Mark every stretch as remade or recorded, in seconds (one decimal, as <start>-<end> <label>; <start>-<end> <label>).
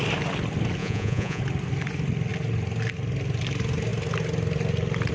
0.0-0.8 recorded; 0.8-1.4 remade; 1.4-5.1 recorded